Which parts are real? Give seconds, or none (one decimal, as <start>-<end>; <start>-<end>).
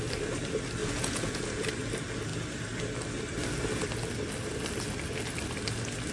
0.0-0.8; 1.7-6.1